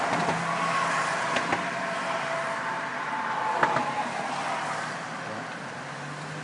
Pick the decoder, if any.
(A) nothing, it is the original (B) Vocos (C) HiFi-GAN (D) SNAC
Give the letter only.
A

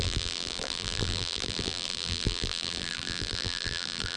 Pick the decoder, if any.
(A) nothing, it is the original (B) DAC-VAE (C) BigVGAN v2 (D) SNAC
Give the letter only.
C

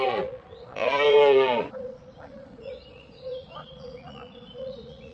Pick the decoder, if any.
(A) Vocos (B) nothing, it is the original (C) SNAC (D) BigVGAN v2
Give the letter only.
A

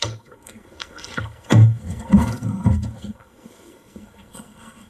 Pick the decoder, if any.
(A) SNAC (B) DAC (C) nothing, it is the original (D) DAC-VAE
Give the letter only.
A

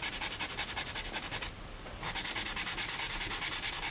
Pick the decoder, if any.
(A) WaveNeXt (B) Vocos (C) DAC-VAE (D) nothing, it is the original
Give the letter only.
D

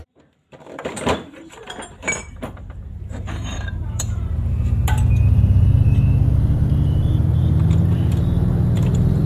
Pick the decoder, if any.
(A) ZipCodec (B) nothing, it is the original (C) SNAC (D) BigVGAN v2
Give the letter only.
D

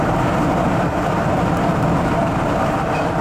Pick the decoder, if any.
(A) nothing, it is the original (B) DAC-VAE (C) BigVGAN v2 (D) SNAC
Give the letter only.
C